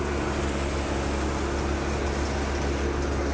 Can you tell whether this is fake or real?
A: real